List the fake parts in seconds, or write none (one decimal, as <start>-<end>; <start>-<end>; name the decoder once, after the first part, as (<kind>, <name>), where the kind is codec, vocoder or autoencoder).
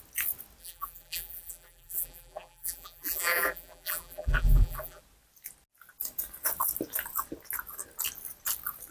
0.6-5.0 (vocoder, BigVGAN v2)